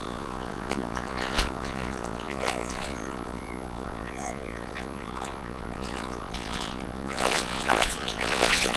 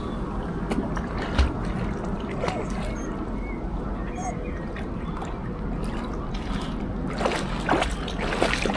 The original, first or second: second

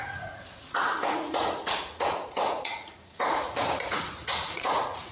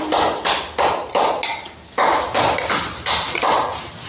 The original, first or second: second